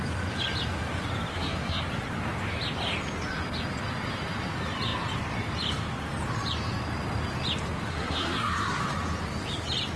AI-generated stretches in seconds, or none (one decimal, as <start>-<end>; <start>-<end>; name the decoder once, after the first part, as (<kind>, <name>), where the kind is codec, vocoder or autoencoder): 1.3-1.8 (codec, SNAC); 7.9-8.8